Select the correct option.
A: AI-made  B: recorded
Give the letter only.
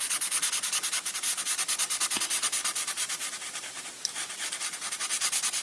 B